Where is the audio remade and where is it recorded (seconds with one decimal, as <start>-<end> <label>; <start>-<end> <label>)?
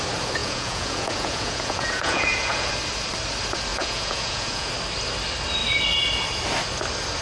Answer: 0.0-0.4 recorded; 0.4-2.7 remade; 2.7-3.7 recorded; 3.7-4.7 remade; 4.7-7.2 recorded